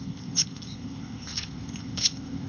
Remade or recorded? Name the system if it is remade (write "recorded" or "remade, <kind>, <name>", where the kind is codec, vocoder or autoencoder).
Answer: remade, codec, ZipCodec